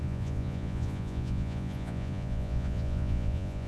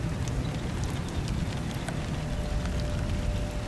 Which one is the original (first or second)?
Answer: second